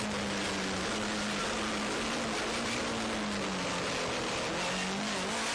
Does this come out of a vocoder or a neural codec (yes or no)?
no